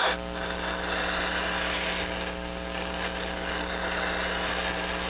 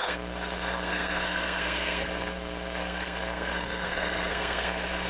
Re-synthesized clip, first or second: second